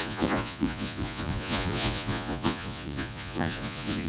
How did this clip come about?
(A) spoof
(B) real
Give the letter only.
A